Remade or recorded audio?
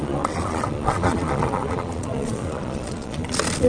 remade